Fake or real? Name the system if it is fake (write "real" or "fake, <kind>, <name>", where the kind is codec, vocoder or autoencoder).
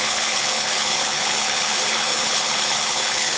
fake, codec, HILCodec